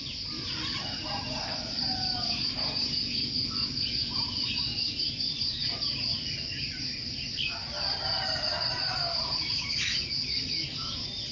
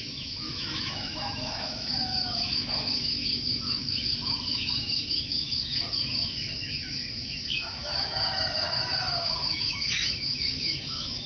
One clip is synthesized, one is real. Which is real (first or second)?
first